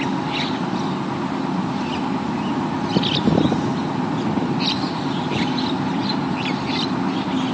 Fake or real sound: real